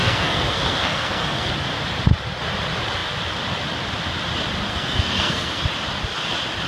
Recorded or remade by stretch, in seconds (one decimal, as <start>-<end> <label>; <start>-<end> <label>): 0.0-1.5 remade; 1.5-4.7 recorded; 4.7-5.6 remade; 5.6-6.7 recorded

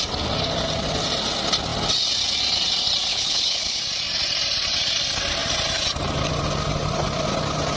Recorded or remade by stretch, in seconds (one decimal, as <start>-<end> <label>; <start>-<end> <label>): 0.0-3.1 recorded; 3.1-3.8 remade; 3.8-7.8 recorded